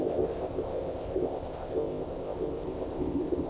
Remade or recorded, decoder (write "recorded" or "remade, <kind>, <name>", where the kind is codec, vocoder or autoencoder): remade, codec, ZipCodec